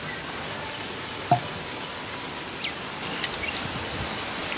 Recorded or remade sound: recorded